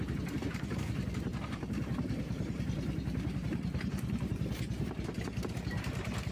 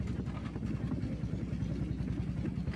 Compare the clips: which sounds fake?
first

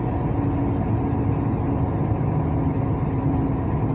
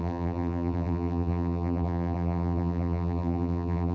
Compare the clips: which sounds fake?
second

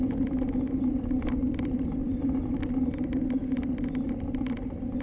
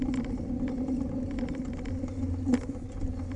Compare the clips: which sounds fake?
first